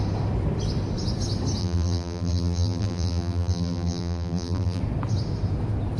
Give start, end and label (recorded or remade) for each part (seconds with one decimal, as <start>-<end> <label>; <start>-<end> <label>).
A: 0.0-1.6 recorded; 1.6-4.8 remade; 4.8-6.0 recorded

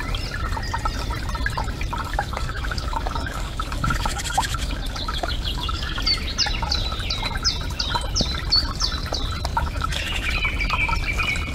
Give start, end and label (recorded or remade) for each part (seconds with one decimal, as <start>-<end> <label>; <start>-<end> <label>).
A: 0.0-2.1 recorded; 2.1-6.0 remade; 6.0-9.5 recorded; 9.5-10.3 remade; 10.3-11.5 recorded

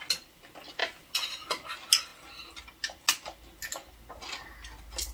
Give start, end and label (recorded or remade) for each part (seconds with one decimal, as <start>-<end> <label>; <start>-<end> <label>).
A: 0.0-0.8 recorded; 0.8-1.5 remade; 1.5-5.1 recorded

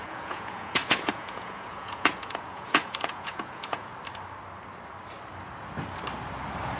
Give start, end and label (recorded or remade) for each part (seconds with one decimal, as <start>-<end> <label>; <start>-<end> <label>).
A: 0.0-3.9 remade; 3.9-6.8 recorded

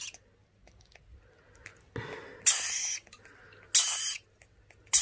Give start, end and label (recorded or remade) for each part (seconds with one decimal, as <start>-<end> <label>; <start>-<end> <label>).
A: 0.0-5.0 recorded